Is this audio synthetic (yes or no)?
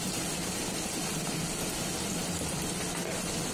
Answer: no